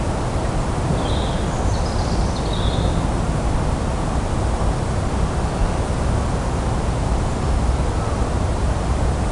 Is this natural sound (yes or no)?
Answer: yes